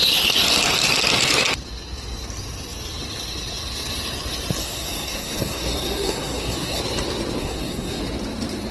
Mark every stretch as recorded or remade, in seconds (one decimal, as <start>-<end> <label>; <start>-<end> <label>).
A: 0.0-4.6 recorded; 4.6-6.8 remade; 6.8-7.4 recorded; 7.4-8.0 remade; 8.0-8.7 recorded